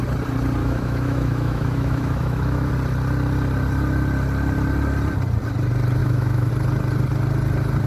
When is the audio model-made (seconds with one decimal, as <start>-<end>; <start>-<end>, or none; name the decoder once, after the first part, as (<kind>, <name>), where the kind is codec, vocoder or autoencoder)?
0.6-2.7 (autoencoder, DAC-VAE); 6.0-6.5